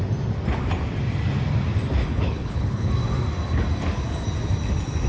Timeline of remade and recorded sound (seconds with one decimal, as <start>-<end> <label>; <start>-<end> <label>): 0.0-2.0 recorded; 2.0-2.9 remade; 2.9-5.1 recorded

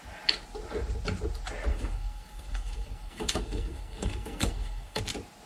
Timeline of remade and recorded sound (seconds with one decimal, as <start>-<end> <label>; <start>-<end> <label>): 0.0-1.7 recorded; 1.7-5.0 remade; 5.0-5.5 recorded

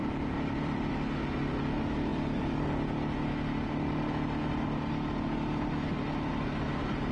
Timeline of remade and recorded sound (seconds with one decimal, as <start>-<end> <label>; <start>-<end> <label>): 0.0-0.9 remade; 0.9-7.1 recorded

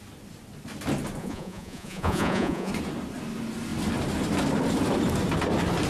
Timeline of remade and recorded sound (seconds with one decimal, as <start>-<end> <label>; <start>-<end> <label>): 0.0-1.2 recorded; 1.2-2.7 remade; 2.7-5.9 recorded

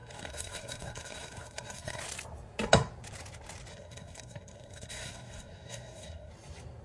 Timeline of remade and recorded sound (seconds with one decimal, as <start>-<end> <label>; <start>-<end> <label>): 0.0-2.0 remade; 2.0-3.7 recorded; 3.7-6.3 remade; 6.3-6.8 recorded